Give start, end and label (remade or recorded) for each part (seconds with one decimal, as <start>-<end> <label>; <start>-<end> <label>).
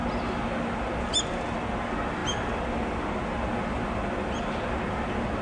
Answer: 0.0-5.4 recorded